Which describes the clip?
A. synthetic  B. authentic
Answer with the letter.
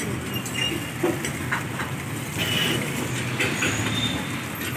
B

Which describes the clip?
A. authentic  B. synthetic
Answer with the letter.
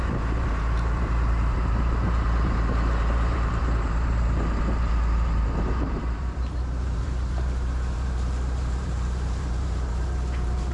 B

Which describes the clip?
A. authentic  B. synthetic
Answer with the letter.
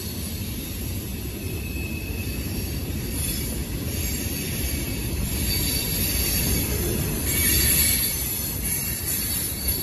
B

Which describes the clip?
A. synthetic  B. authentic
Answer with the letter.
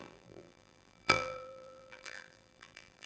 A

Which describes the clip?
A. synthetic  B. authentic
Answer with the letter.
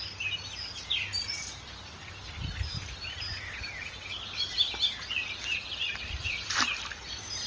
B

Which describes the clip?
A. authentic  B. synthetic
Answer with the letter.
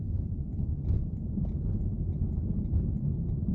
B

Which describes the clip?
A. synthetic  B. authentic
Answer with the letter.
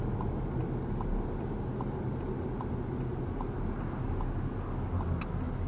B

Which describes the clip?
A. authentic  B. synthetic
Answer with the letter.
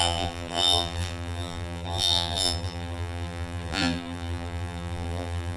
B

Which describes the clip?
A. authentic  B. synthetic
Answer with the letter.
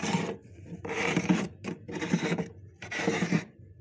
B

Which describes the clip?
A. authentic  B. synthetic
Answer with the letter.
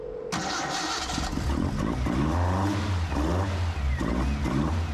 A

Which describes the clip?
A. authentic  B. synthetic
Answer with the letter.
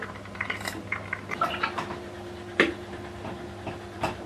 B